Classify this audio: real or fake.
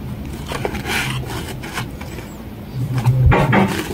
real